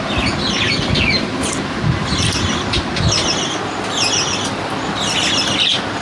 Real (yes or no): yes